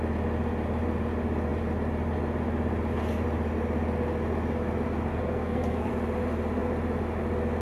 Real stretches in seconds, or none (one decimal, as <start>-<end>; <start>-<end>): 0.0-5.1; 5.9-7.6